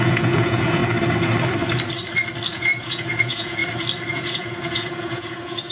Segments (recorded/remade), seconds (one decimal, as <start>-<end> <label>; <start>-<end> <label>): 0.0-0.8 remade; 0.8-2.5 recorded; 2.5-3.6 remade; 3.6-4.1 recorded; 4.1-5.7 remade